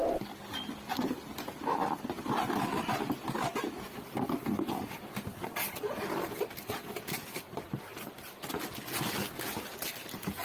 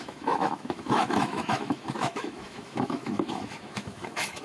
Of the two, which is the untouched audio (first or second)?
first